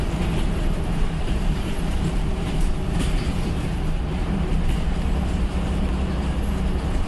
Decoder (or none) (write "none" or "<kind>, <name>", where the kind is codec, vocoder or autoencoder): vocoder, BigVGAN v2